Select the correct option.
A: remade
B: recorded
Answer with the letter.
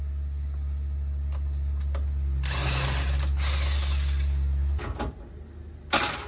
B